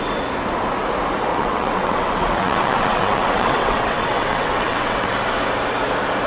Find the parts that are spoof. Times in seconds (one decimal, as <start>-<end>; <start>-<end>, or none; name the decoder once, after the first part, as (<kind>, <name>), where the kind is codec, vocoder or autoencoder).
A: 1.3-5.1 (vocoder, WaveNeXt)

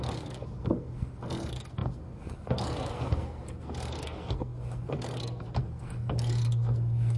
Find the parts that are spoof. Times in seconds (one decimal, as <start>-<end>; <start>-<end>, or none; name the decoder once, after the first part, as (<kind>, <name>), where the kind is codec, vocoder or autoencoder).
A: 0.0-7.2 (codec, SNAC)

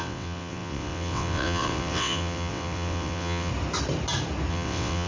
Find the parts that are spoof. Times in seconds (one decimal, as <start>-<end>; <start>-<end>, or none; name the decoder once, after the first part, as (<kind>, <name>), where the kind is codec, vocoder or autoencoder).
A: 0.0-3.5 (vocoder, WaveNeXt); 4.5-5.1

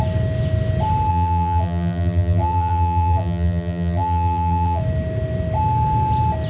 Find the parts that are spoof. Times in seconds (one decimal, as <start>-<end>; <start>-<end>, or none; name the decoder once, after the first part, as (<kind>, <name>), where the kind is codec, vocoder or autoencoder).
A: 1.1-4.8 (vocoder, BigVGAN v2)

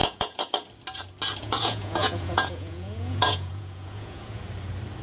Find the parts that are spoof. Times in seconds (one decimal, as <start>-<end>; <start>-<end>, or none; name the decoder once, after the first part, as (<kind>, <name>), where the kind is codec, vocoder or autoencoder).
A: 0.0-0.5 (vocoder, Vocos); 1.4-4.4

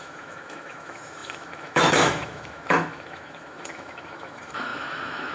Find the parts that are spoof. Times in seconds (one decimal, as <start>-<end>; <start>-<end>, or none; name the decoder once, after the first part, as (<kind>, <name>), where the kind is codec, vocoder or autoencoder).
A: 0.0-5.3 (autoencoder, DAC-VAE)